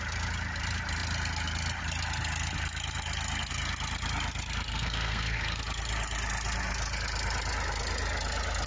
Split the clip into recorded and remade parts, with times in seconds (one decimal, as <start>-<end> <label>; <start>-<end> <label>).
0.0-4.7 recorded; 4.7-5.6 remade; 5.6-8.7 recorded